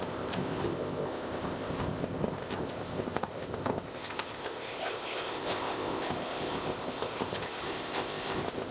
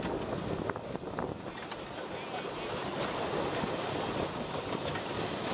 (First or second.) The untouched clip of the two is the second